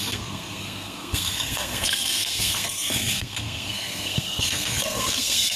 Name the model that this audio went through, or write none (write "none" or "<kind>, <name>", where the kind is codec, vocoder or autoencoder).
codec, SNAC